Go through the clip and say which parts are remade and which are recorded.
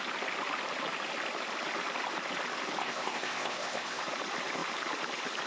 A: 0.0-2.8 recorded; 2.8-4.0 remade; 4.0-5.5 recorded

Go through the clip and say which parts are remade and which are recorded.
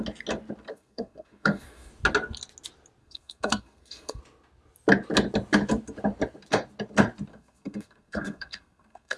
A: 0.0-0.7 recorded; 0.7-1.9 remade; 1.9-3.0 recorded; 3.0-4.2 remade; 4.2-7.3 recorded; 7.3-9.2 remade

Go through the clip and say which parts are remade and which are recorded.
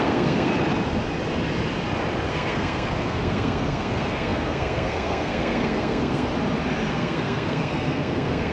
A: 0.0-0.5 remade; 0.5-2.3 recorded; 2.3-6.3 remade; 6.3-6.9 recorded; 6.9-8.5 remade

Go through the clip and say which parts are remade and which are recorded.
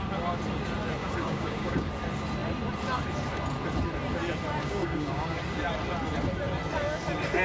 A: 0.0-1.0 recorded; 1.0-1.9 remade; 1.9-4.6 recorded; 4.6-5.4 remade; 5.4-7.4 recorded